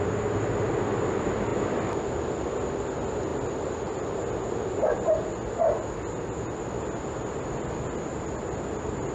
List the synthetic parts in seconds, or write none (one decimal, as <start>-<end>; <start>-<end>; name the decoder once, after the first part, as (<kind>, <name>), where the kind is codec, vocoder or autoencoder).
none